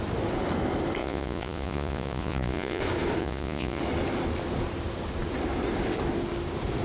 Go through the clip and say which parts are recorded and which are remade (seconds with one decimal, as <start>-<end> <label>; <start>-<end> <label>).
0.0-1.0 recorded; 1.0-2.8 remade; 2.8-3.2 recorded; 3.2-3.8 remade; 3.8-6.8 recorded